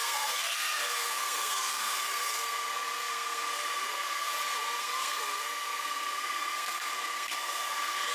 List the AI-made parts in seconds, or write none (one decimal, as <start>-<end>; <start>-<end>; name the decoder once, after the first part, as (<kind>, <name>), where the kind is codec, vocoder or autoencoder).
0.0-4.3 (codec, SNAC); 4.8-8.1